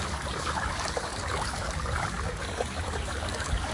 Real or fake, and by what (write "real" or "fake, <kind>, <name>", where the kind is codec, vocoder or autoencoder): fake, codec, DAC